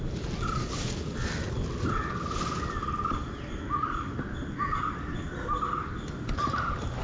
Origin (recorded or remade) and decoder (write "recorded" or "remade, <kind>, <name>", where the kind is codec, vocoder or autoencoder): recorded